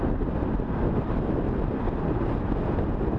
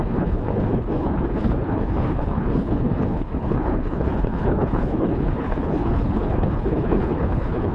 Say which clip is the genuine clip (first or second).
first